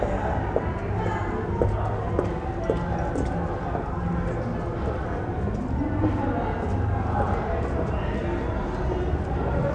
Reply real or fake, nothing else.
real